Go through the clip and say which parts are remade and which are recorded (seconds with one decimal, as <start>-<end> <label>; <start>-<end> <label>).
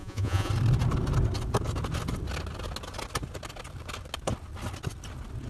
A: 0.0-0.5 remade; 0.5-5.5 recorded